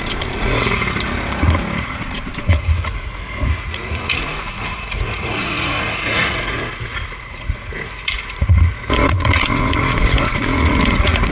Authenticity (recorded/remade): remade